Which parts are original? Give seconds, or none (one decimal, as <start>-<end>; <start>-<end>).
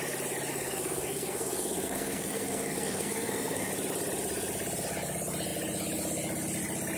0.0-0.5; 3.7-7.0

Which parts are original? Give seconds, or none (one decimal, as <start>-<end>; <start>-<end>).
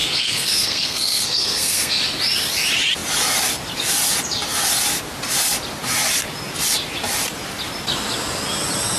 2.0-9.0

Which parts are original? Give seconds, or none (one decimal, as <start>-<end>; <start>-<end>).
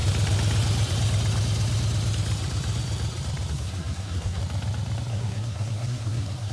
0.0-3.5; 4.4-5.1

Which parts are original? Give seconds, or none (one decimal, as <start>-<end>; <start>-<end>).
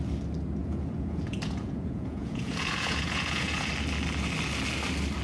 0.0-0.6; 3.7-5.2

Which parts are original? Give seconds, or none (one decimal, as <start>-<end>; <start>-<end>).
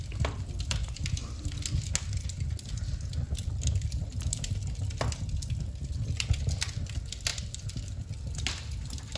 0.0-9.2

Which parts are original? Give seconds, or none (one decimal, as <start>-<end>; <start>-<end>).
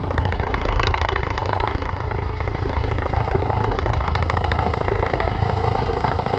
none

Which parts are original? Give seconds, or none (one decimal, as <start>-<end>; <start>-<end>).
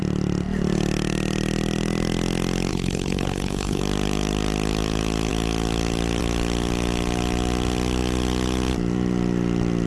0.0-2.7; 3.8-9.9